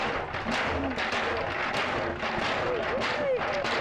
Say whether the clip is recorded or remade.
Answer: recorded